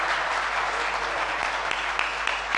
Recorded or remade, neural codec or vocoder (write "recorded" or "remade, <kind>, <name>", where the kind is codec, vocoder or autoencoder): recorded